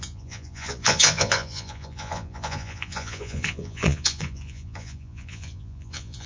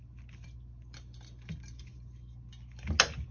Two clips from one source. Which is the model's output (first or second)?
first